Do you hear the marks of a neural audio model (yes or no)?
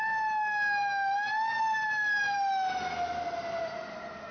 no